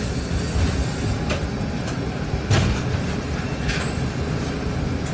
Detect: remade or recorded recorded